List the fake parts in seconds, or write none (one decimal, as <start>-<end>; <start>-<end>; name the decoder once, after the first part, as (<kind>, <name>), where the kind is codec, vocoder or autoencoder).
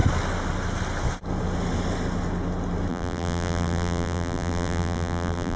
2.9-5.6 (vocoder, BigVGAN v2)